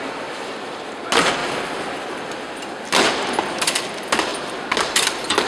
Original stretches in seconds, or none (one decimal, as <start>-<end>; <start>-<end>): 0.0-5.5